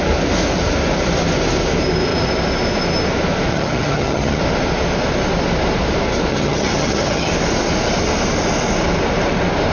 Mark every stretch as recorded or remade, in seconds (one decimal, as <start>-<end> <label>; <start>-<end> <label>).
0.0-3.5 recorded; 3.5-4.4 remade; 4.4-6.3 recorded; 6.3-7.3 remade; 7.3-9.7 recorded